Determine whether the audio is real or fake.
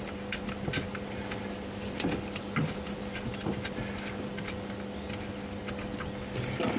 real